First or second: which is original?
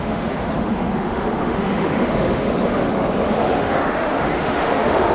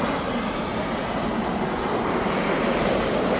second